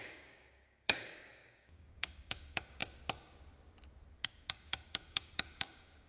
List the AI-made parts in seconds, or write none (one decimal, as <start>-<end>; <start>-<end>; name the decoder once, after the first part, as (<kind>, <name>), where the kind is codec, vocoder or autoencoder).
0.0-2.8 (codec, DAC); 4.2-6.1